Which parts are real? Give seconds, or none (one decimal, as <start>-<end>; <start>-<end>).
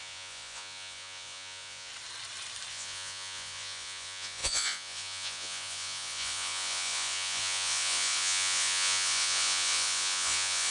1.9-2.7